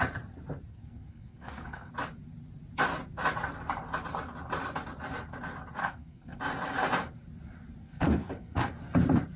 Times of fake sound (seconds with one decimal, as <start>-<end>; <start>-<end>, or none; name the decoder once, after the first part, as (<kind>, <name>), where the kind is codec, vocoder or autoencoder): 0.7-1.9 (codec, SNAC); 5.8-6.4; 7.8-8.7